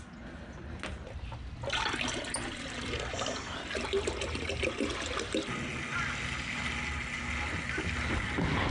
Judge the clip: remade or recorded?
recorded